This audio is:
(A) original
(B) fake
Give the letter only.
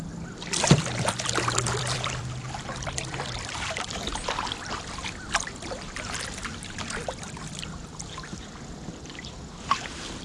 B